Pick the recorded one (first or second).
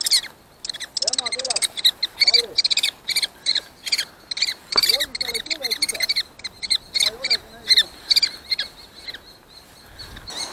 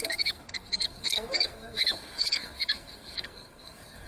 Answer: first